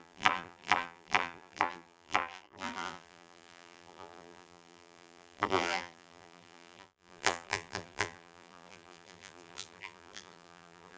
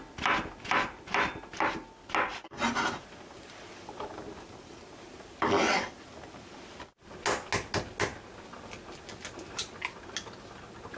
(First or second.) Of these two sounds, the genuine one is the second